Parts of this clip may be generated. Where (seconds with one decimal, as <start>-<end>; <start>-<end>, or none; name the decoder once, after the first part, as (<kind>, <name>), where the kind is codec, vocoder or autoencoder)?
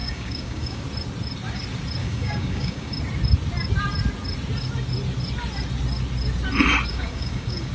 0.0-0.8 (codec, DAC); 2.0-3.0; 6.9-7.7